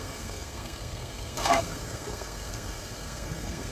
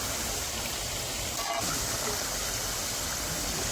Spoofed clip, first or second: first